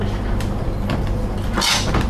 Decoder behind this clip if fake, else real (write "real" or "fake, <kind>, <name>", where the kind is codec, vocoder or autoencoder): real